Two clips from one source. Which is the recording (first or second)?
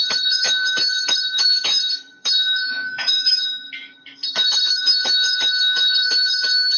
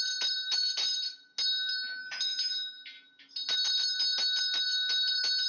second